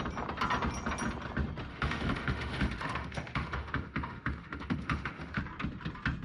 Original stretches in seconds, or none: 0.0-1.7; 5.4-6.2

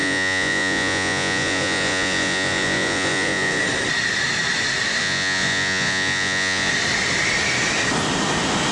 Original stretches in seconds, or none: 3.6-5.0; 6.7-8.7

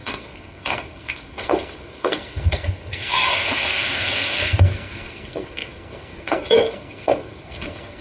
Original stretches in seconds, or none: none

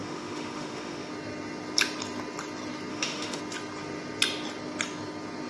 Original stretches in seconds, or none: 1.1-2.9; 3.4-5.5

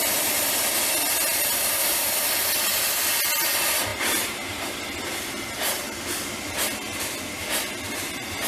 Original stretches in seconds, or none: 0.0-1.8; 2.3-8.5

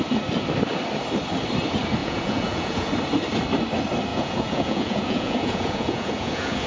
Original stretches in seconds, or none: 0.0-2.0; 2.9-4.1